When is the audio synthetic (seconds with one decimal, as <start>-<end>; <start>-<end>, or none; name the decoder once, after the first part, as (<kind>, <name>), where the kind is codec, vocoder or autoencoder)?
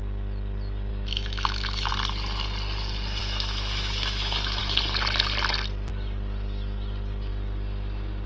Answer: 0.9-1.9 (autoencoder, DAC-VAE); 3.2-4.6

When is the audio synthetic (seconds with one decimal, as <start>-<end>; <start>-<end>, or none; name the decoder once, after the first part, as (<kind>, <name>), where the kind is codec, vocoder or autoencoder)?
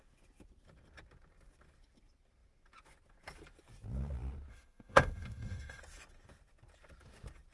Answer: 4.5-5.8 (autoencoder, DAC-VAE)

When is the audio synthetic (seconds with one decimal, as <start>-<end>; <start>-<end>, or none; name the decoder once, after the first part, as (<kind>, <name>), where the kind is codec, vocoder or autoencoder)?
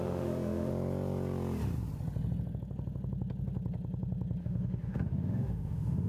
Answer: 0.0-0.7 (autoencoder, DAC-VAE); 4.4-6.1